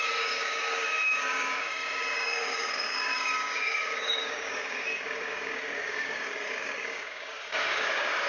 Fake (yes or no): yes